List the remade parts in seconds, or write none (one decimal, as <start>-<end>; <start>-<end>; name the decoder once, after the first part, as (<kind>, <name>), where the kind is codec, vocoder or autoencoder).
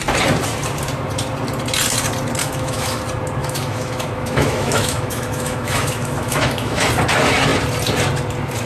2.4-3.0 (autoencoder, DAC-VAE); 3.4-6.9